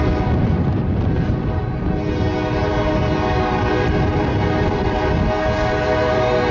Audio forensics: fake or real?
real